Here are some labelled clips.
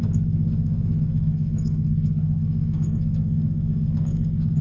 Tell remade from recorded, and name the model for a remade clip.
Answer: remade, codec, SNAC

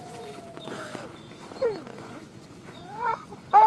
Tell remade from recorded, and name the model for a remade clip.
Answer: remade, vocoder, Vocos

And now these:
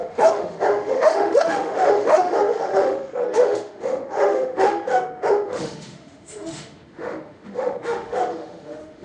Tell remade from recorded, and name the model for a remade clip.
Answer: remade, autoencoder, DAC-VAE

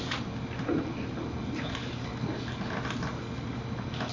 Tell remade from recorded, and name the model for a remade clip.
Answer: recorded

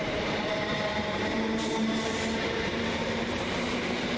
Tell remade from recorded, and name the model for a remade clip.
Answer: remade, vocoder, BigVGAN v2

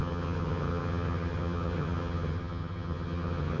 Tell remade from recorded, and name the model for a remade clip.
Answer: remade, vocoder, HiFi-GAN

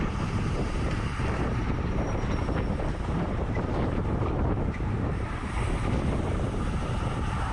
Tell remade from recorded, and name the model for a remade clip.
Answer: remade, vocoder, BigVGAN v2